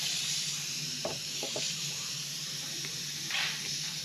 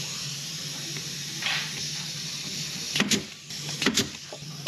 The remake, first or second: first